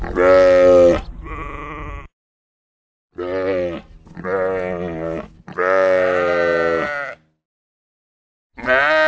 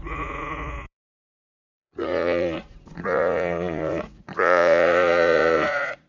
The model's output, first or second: second